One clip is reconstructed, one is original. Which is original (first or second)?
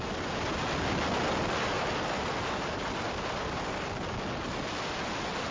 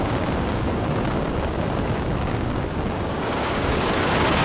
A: first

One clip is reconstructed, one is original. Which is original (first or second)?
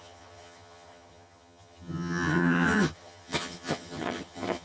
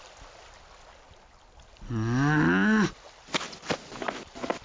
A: second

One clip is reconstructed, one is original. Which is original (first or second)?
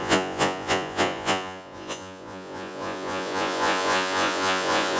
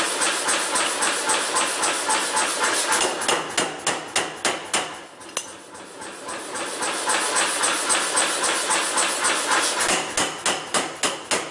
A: second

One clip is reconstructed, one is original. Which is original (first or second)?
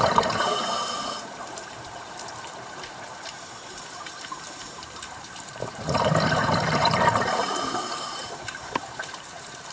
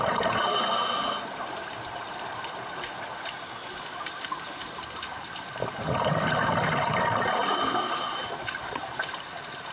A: second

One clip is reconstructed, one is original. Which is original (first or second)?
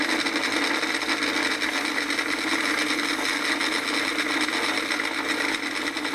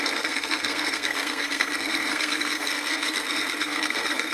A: first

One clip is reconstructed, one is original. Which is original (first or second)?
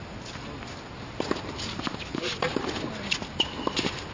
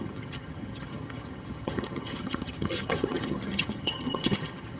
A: first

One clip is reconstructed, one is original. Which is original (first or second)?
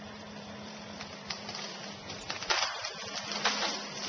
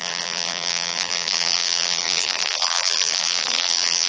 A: first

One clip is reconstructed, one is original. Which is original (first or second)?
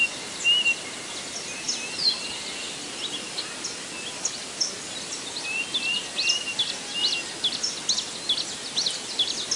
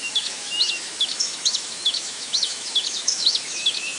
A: first